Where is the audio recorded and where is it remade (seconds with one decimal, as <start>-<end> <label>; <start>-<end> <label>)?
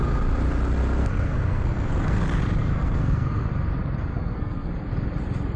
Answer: 0.0-1.0 recorded; 1.0-2.2 remade; 2.2-2.6 recorded; 2.6-3.5 remade; 3.5-4.1 recorded; 4.1-4.7 remade; 4.7-5.6 recorded